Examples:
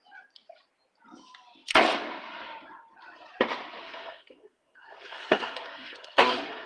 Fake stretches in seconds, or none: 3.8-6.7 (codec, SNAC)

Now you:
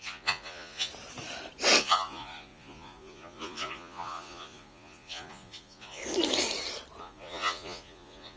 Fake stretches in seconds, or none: 0.0-0.9 (vocoder, Vocos); 1.8-6.0; 7.0-8.4

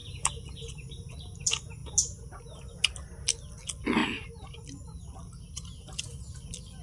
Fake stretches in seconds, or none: 0.0-1.1 (vocoder, BigVGAN v2); 4.0-6.0

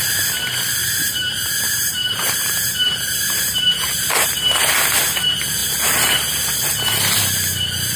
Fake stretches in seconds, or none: 0.8-4.7 (vocoder, BigVGAN v2); 5.6-8.0

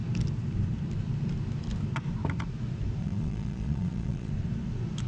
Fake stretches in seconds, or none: 3.0-4.3 (vocoder, Vocos)

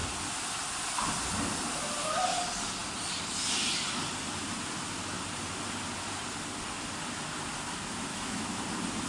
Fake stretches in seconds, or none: 8.1-8.6 (autoencoder, DAC-VAE)